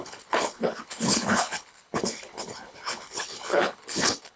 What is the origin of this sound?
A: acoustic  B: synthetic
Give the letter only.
B